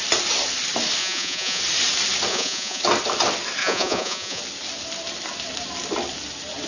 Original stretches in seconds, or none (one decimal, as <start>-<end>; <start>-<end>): 0.0-1.0; 1.6-2.3; 2.8-3.6; 4.4-6.7